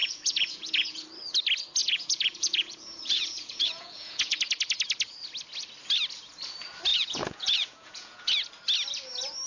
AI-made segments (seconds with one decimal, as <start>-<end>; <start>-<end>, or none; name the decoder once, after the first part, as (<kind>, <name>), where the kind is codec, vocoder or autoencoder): 0.0-1.0 (vocoder, Vocos); 1.8-4.4; 6.9-8.3

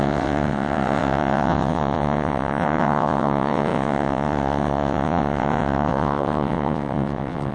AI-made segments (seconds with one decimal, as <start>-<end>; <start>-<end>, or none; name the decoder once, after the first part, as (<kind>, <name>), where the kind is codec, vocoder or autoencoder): 0.0-7.5 (vocoder, WaveNeXt)